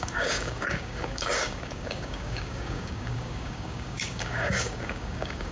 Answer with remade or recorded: remade